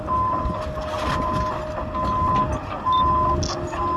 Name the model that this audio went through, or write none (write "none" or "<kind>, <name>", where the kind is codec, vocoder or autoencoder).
none